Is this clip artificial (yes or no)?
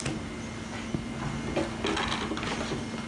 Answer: no